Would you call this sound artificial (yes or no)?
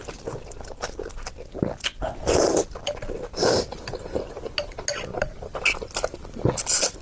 no